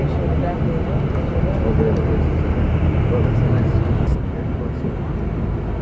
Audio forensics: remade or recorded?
recorded